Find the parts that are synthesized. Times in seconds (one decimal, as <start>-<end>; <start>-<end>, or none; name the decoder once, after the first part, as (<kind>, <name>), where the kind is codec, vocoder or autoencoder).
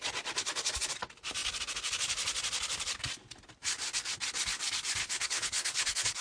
5.0-6.2 (codec, HILCodec)